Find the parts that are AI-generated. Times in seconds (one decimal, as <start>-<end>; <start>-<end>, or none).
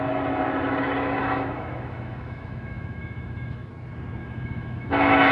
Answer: 1.2-3.7; 4.2-5.3